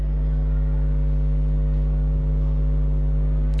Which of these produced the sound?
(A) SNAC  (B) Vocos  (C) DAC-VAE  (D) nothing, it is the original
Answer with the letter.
D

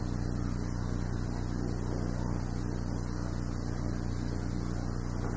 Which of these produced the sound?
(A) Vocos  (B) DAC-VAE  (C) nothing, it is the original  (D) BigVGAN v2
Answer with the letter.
C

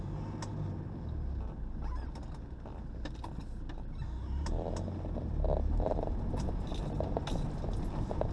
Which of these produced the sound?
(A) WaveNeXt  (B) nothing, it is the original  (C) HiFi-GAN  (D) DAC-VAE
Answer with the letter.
B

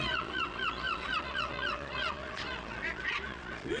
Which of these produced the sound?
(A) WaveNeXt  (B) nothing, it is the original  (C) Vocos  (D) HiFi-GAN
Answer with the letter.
C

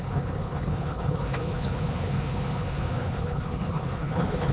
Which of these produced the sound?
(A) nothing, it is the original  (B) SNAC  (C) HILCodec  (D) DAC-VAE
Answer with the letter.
C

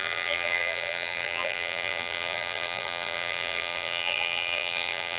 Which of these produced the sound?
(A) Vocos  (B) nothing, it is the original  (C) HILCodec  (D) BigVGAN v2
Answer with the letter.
D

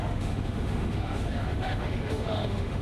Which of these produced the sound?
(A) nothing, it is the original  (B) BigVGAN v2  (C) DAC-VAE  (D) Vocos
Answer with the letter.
C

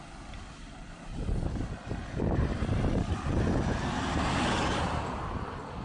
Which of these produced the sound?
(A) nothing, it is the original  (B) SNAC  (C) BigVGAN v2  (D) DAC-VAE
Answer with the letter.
A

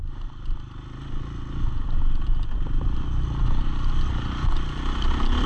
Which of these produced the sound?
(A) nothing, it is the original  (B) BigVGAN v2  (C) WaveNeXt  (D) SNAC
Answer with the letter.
A